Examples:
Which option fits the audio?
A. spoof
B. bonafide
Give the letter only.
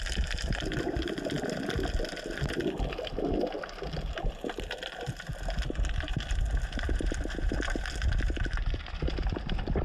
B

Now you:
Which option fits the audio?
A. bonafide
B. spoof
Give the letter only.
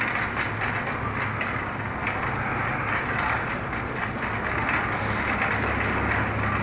A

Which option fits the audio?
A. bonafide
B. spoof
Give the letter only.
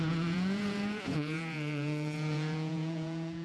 B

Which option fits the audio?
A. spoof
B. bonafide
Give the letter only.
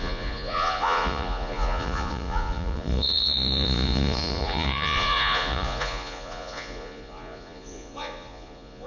A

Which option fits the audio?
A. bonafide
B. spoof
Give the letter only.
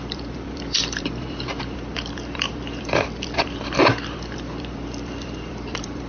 B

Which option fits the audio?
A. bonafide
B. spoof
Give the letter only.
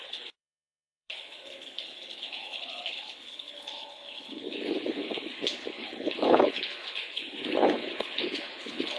B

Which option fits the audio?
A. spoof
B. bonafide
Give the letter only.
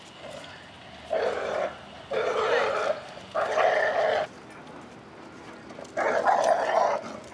B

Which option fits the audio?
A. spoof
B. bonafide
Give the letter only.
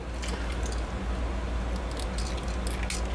B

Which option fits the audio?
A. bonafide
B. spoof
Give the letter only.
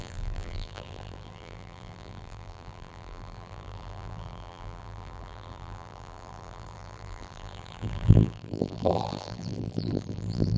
B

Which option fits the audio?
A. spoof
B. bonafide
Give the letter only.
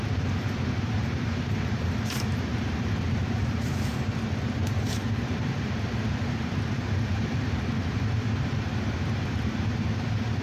A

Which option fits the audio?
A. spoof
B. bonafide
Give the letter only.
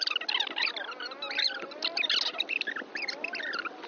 B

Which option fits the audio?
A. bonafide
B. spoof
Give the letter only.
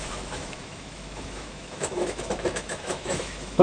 B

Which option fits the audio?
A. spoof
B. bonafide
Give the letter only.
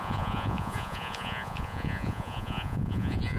A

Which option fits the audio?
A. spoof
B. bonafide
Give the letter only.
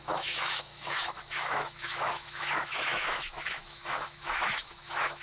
A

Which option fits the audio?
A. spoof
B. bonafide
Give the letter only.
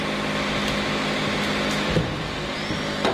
B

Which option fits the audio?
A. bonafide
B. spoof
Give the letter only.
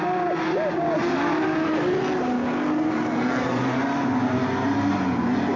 A